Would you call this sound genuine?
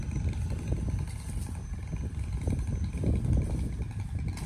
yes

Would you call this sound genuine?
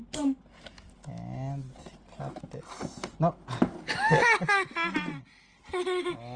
yes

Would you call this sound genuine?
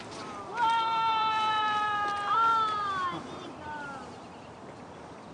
no